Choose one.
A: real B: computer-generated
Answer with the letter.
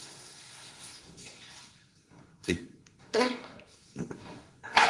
B